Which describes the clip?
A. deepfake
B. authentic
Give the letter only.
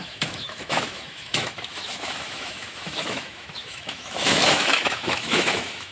A